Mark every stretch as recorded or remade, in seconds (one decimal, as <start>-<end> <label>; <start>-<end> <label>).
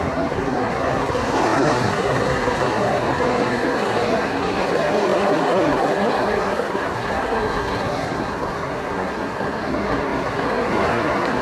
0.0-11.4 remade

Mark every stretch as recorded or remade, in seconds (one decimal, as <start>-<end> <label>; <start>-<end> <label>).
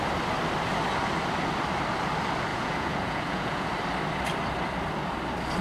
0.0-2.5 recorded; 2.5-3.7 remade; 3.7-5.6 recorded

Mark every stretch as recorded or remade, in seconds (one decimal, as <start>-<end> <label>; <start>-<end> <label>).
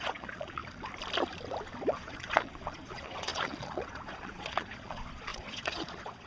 0.0-0.6 remade; 0.6-1.9 recorded; 1.9-6.3 remade